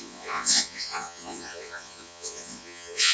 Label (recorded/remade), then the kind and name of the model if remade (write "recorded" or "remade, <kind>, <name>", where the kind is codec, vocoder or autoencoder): remade, vocoder, Vocos